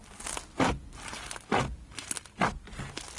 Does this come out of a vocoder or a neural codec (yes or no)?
no